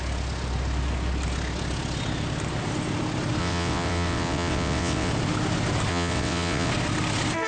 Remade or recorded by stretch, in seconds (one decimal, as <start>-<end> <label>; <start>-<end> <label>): 0.0-3.4 recorded; 3.4-5.1 remade; 5.1-5.9 recorded; 5.9-6.7 remade; 6.7-7.5 recorded